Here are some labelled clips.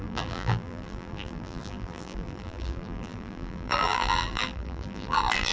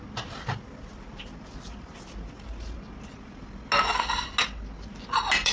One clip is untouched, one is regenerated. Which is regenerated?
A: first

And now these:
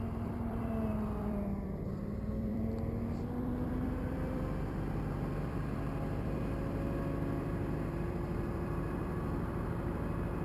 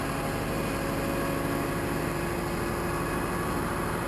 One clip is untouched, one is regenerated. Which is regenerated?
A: first